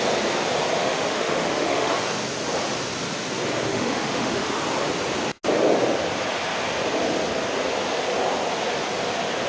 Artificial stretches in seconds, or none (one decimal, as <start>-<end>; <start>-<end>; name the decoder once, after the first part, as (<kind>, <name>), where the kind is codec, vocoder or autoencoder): 0.8-1.9 (autoencoder, DAC-VAE); 3.7-4.6